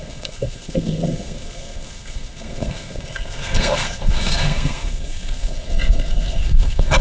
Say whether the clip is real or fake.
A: fake